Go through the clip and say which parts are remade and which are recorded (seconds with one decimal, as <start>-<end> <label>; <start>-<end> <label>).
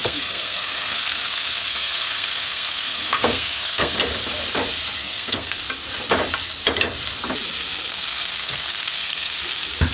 0.0-4.0 remade; 4.0-5.0 recorded; 5.0-5.6 remade; 5.6-7.9 recorded; 7.9-9.4 remade; 9.4-9.9 recorded